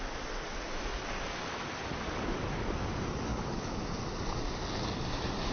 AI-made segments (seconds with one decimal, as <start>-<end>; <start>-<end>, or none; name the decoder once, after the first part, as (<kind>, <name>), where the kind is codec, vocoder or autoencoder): 3.3-3.8 (codec, HILCodec)